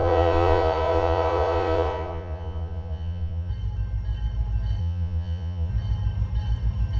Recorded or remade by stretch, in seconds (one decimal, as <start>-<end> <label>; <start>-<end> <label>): 0.0-3.5 remade; 3.5-4.8 recorded; 4.8-5.7 remade; 5.7-7.0 recorded